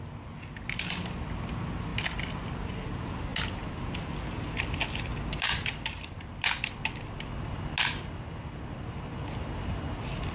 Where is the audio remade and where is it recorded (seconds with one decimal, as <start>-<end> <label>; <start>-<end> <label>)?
0.0-10.3 recorded